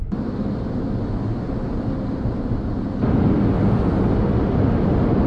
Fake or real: real